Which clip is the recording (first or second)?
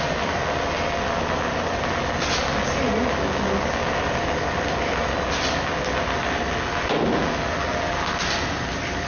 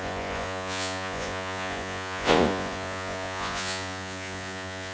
first